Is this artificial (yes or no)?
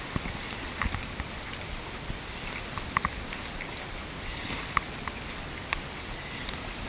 no